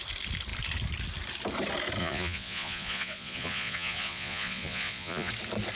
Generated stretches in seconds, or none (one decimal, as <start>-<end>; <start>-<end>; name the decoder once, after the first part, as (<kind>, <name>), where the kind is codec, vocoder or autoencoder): 2.0-5.3 (vocoder, Vocos)